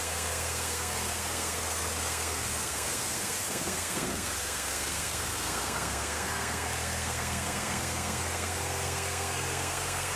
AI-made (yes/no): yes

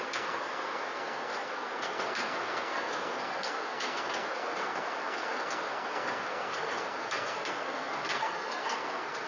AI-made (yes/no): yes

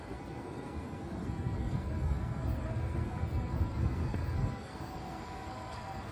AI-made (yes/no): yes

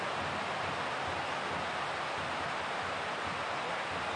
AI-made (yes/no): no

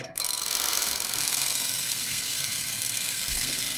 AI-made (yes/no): yes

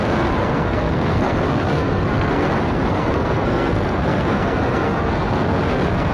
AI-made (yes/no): yes